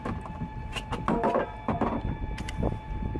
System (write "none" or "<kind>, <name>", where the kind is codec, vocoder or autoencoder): none